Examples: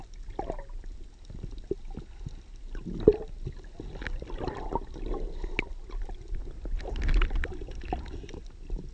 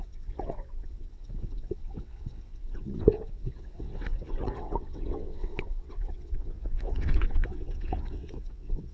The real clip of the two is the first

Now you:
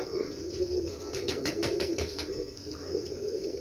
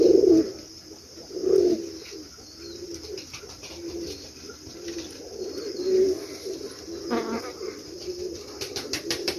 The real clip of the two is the second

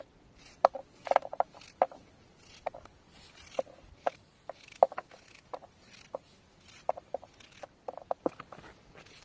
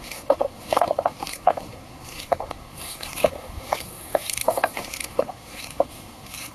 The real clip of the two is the first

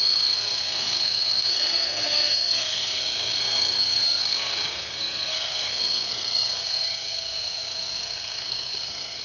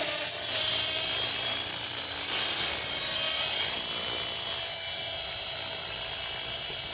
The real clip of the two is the second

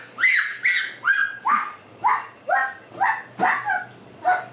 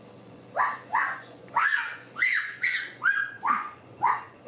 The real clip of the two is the first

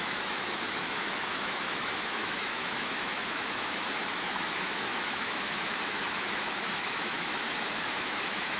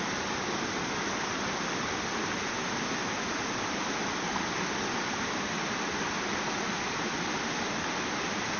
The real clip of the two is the second